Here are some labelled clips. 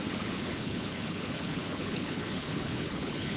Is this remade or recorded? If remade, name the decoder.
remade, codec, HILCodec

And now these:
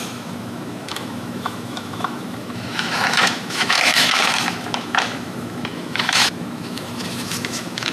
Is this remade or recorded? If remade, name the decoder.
remade, autoencoder, DAC-VAE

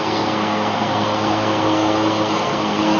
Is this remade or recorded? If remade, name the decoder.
remade, codec, SNAC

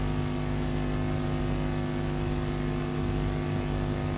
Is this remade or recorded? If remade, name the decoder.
recorded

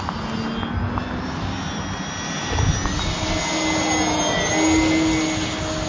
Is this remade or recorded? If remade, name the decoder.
recorded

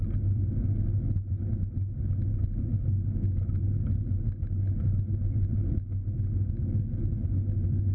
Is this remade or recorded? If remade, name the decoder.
recorded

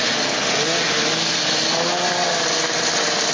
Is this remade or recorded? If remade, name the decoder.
recorded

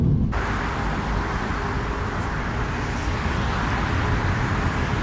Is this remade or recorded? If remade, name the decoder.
recorded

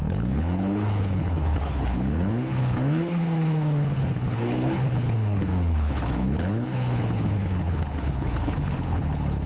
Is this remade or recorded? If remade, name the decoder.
remade, codec, HILCodec